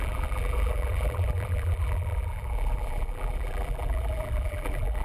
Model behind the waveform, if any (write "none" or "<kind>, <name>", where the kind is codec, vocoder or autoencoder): vocoder, BigVGAN v2